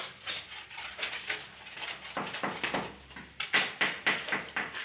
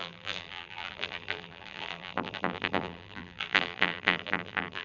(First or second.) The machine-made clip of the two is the second